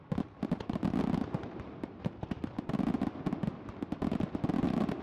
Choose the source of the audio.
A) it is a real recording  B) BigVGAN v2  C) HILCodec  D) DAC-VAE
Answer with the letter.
A